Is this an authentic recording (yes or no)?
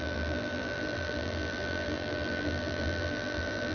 no